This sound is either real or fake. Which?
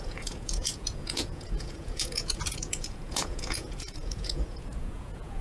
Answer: fake